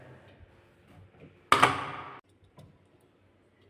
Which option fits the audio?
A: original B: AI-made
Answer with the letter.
A